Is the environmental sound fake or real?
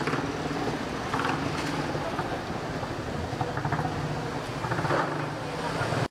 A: real